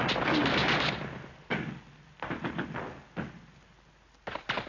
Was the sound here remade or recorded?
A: recorded